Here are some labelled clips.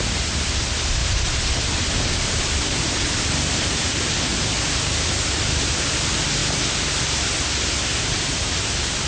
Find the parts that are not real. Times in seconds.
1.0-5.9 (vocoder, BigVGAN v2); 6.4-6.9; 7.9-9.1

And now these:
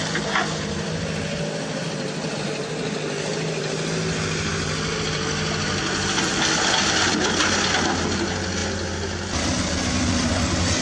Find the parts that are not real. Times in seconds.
none

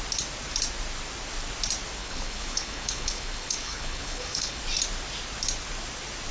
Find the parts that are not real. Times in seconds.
2.0-4.6 (codec, HILCodec)

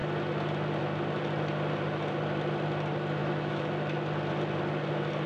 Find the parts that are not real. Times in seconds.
3.2-3.7 (autoencoder, DAC-VAE)

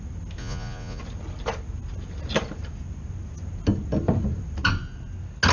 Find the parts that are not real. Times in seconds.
0.4-1.0 (vocoder, Vocos)

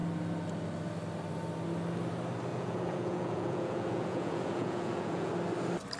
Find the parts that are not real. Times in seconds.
2.5-5.3 (vocoder, Vocos)